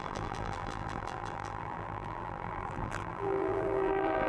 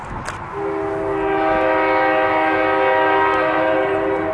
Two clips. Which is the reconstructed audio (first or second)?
first